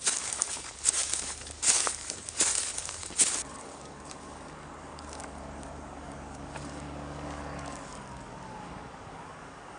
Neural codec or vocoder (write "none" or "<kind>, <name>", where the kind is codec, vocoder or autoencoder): codec, DAC